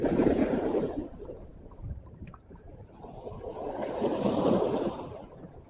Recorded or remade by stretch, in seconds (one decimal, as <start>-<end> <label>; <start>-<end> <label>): 0.0-5.7 remade